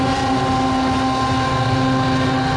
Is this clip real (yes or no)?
yes